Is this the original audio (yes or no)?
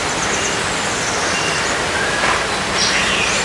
yes